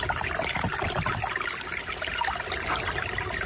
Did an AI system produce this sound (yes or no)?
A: no